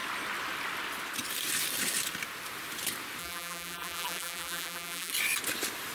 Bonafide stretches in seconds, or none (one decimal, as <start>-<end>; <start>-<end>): 0.0-3.2; 5.1-5.9